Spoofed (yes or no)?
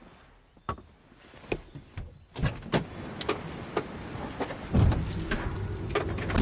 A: no